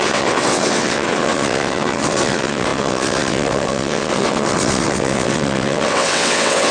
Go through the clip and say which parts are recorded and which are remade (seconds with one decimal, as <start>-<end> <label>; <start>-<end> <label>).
0.0-6.7 remade